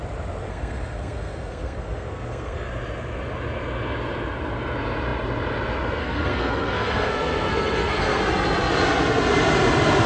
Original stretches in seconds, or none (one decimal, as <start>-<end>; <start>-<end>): 0.0-0.5; 2.7-6.0; 8.2-10.1